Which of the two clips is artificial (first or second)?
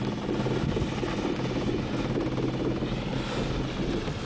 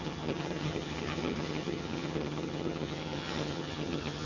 second